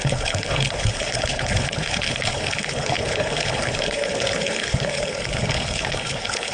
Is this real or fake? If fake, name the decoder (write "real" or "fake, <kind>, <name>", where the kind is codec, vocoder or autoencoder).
fake, codec, HILCodec